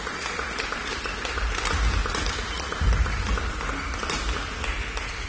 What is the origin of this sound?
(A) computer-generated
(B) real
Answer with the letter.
B